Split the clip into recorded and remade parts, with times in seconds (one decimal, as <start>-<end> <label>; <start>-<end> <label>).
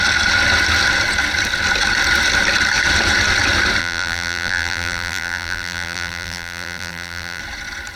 0.0-3.8 recorded; 3.8-7.4 remade; 7.4-8.0 recorded